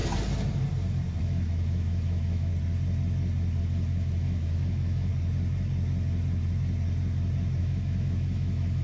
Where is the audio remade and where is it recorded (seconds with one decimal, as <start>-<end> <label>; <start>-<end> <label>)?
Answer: 0.0-1.2 recorded; 1.2-2.5 remade; 2.5-3.6 recorded; 3.6-5.1 remade; 5.1-7.6 recorded; 7.6-8.8 remade